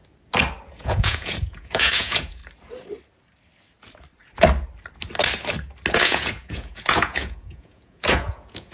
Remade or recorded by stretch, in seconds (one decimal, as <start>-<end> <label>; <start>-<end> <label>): 0.0-0.7 recorded; 0.7-2.4 remade; 2.4-5.9 recorded; 5.9-8.7 remade